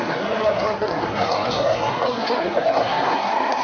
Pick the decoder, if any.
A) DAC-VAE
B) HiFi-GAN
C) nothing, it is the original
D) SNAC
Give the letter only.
D